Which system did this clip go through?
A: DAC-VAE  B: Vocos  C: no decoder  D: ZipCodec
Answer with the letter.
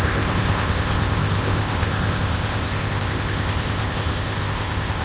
D